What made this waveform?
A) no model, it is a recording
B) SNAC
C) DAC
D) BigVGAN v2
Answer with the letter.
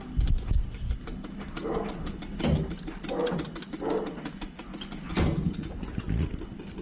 A